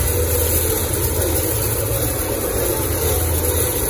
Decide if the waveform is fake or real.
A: real